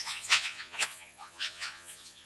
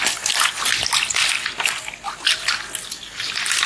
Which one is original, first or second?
second